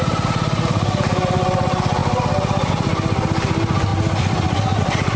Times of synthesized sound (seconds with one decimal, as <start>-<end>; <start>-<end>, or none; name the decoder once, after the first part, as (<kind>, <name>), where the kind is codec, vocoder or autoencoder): none